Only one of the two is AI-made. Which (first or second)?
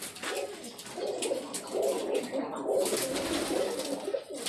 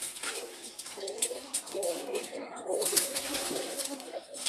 second